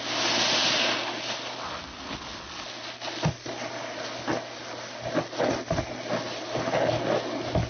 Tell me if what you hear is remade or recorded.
recorded